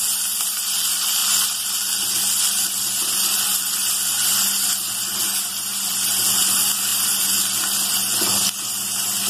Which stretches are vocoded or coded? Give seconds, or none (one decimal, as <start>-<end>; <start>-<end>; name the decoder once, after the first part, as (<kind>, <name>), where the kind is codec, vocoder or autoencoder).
none